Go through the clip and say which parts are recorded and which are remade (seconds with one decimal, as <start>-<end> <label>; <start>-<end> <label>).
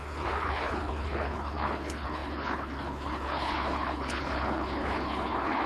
0.0-5.7 remade